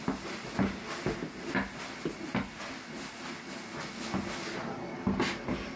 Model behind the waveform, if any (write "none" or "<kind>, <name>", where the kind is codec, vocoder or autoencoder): none